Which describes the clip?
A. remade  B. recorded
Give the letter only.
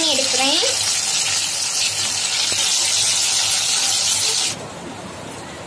B